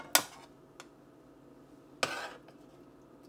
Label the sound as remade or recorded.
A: recorded